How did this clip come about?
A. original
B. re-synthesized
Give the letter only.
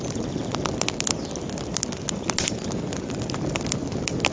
A